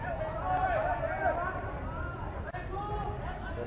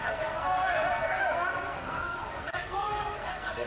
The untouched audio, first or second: first